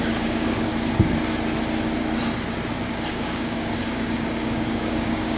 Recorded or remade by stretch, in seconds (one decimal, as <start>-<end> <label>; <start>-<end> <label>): 0.0-0.7 remade; 0.7-3.1 recorded; 3.1-5.4 remade